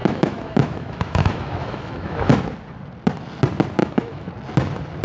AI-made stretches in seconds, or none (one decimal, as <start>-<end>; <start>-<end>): 0.0-2.3; 3.8-4.3

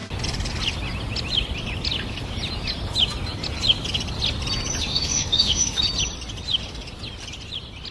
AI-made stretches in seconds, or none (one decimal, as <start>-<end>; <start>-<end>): 4.8-5.8

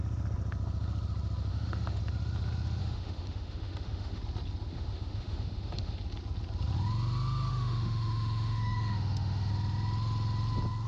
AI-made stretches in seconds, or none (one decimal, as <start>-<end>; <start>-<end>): 1.5-2.0; 2.8-4.2; 4.7-6.0; 7.5-9.5

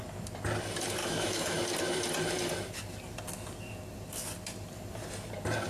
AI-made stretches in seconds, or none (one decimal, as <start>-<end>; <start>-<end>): 1.0-1.6

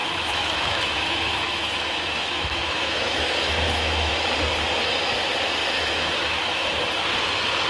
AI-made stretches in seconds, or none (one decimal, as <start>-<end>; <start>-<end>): 0.0-4.1; 5.6-6.1

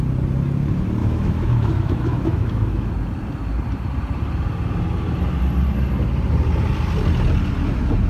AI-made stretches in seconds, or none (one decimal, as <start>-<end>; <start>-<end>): 1.0-2.9

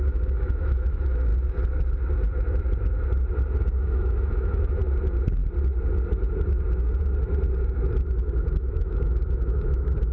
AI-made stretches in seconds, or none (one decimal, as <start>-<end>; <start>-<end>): 0.0-1.3; 3.6-4.8; 8.5-10.1

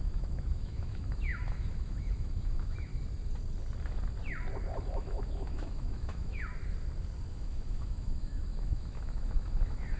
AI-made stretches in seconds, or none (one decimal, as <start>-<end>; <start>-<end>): 0.0-2.9; 4.9-6.5; 7.3-10.0